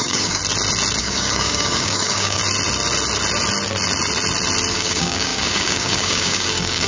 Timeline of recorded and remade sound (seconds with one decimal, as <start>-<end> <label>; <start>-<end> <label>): 0.0-0.4 remade; 0.4-1.0 recorded; 1.0-2.4 remade; 2.4-4.7 recorded; 4.7-6.9 remade